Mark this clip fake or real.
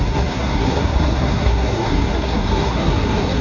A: fake